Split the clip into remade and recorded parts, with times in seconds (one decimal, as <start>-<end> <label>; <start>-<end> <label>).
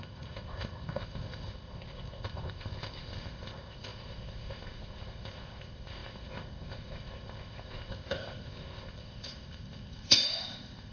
0.0-10.9 remade